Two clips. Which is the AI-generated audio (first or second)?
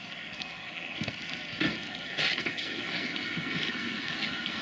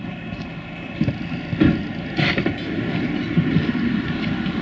first